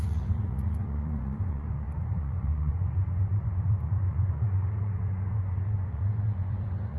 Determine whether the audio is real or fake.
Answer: fake